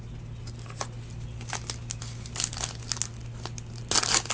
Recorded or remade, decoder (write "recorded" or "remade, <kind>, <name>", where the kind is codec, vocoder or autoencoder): recorded